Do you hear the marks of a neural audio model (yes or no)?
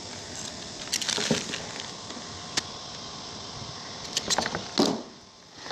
no